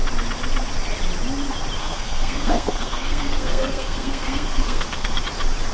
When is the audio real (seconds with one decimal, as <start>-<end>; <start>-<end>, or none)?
0.0-1.8; 5.2-5.7